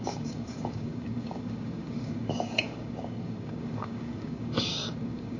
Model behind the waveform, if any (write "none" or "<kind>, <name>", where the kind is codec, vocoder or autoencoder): codec, DAC